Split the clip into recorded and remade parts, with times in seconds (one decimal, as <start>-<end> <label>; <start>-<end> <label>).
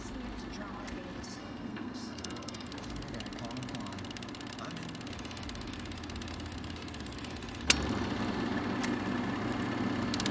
0.0-1.4 recorded; 1.4-2.7 remade; 2.7-10.3 recorded